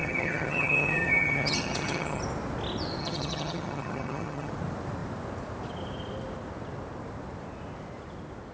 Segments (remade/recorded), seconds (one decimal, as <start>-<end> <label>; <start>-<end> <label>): 0.0-2.2 remade; 2.2-3.0 recorded; 3.0-4.5 remade; 4.5-8.5 recorded